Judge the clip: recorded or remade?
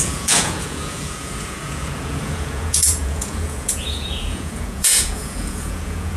remade